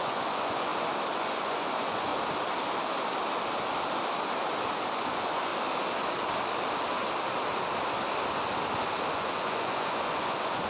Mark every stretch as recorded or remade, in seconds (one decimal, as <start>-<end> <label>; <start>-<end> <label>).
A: 0.0-0.7 remade; 0.7-1.2 recorded; 1.2-2.1 remade; 2.1-4.9 recorded; 4.9-5.5 remade; 5.5-9.1 recorded; 9.1-10.7 remade